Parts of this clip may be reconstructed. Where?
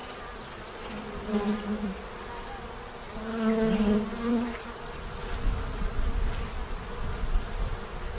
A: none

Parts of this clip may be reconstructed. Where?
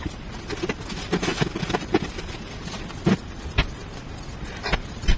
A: none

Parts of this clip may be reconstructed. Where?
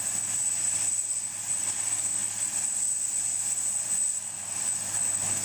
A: none